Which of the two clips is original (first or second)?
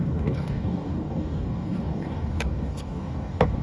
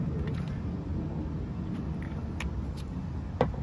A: second